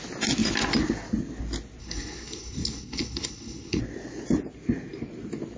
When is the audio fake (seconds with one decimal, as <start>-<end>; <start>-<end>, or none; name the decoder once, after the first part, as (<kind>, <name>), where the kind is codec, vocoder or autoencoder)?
1.8-3.8 (codec, HILCodec)